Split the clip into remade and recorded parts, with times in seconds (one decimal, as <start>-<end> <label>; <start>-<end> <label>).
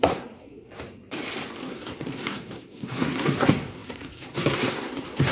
0.0-0.7 remade; 0.7-1.6 recorded; 1.6-5.3 remade